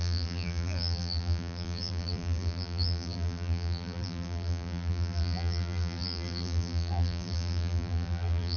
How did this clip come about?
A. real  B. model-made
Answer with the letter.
B